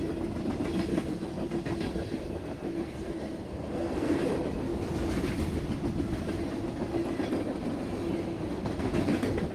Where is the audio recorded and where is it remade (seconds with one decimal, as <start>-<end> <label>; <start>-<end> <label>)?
0.0-0.9 recorded; 0.9-4.2 remade; 4.2-8.3 recorded; 8.3-9.5 remade